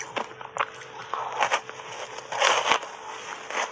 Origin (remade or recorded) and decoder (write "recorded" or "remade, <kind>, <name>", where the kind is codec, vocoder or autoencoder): recorded